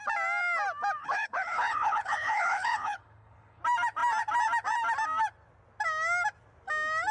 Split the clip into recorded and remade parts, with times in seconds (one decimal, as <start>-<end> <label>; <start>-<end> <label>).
0.0-1.0 recorded; 1.0-3.6 remade; 3.6-7.1 recorded